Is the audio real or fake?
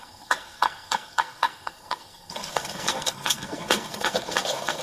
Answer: fake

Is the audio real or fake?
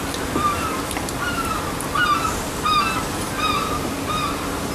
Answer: real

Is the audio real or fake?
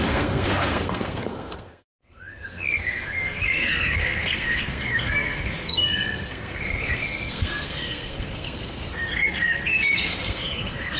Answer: fake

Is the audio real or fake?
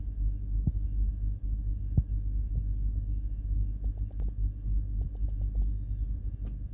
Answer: real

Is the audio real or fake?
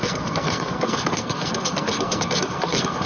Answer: fake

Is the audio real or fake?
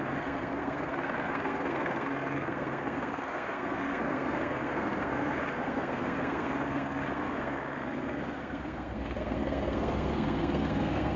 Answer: fake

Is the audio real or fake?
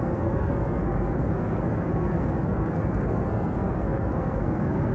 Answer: fake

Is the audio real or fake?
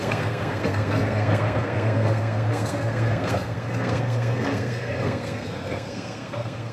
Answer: fake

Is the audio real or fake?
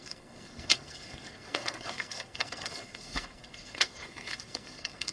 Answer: fake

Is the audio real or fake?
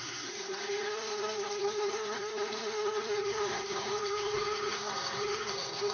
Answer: fake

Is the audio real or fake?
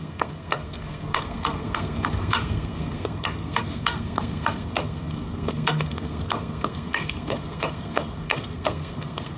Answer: fake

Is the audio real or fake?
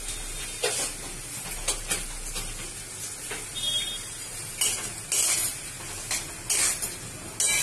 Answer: real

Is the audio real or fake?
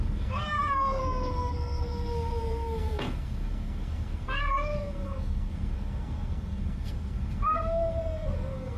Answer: fake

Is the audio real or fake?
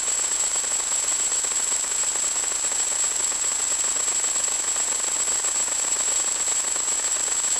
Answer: real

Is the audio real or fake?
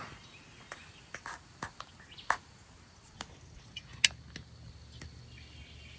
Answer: real